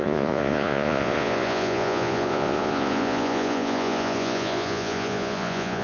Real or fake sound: fake